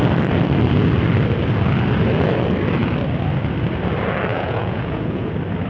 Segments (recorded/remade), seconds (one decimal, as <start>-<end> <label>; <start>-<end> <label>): 0.0-4.3 recorded; 4.3-5.3 remade; 5.3-5.7 recorded